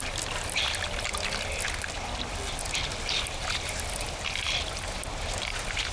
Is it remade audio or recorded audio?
recorded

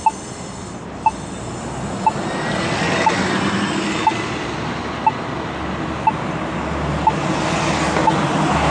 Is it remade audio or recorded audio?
recorded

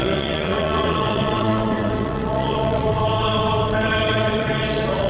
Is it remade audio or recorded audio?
remade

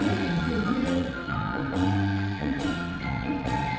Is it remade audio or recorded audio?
remade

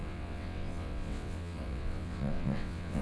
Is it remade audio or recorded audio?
remade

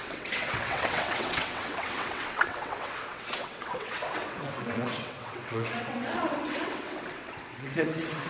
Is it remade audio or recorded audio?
remade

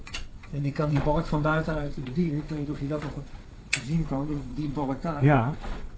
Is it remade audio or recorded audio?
remade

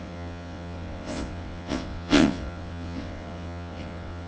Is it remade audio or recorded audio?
remade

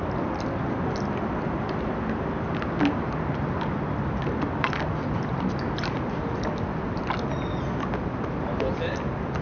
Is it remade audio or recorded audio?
recorded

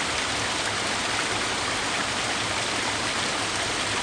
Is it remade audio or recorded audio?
recorded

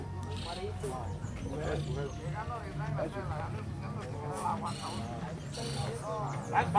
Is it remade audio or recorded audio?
recorded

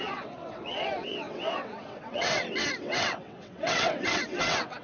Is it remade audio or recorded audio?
remade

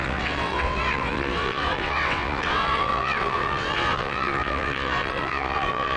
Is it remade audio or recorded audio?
remade